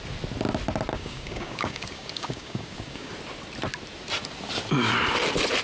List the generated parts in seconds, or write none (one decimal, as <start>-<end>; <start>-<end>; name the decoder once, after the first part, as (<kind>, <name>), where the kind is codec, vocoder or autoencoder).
0.9-3.1 (codec, DAC)